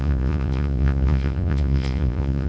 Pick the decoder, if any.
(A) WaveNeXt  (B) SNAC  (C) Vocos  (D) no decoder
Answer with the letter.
C